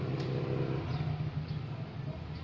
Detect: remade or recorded recorded